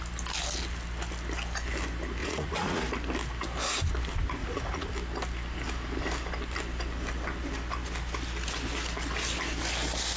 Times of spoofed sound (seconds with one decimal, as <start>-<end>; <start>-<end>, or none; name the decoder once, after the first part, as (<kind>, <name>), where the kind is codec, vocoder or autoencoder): 2.2-2.8 (vocoder, Vocos); 4.4-4.9